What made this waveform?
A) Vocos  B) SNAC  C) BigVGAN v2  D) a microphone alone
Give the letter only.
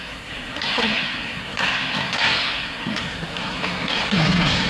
B